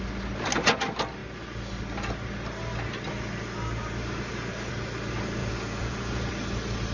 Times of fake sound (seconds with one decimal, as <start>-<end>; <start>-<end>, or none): 5.4-6.3